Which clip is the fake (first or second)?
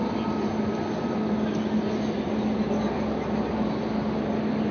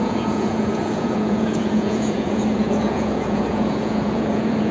second